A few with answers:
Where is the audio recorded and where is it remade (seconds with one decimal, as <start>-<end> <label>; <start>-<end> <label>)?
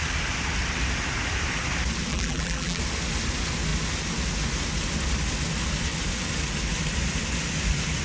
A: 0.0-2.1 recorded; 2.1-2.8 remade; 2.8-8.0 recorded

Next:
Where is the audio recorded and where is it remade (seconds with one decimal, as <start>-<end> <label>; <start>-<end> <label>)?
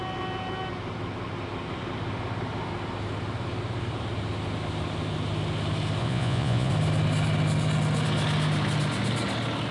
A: 0.0-6.0 recorded; 6.0-6.7 remade; 6.7-9.7 recorded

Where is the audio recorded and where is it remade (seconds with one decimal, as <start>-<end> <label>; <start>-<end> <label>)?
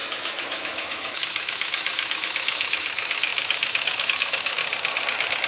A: 0.0-4.6 remade; 4.6-5.5 recorded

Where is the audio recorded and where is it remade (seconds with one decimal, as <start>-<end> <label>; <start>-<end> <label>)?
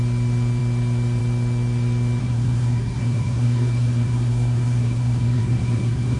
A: 0.0-2.2 recorded; 2.2-6.2 remade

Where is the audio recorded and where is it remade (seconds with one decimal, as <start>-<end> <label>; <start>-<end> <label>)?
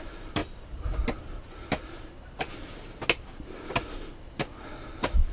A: 0.0-0.4 recorded; 0.4-2.4 remade; 2.4-5.3 recorded